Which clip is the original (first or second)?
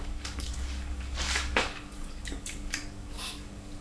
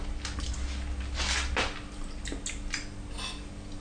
second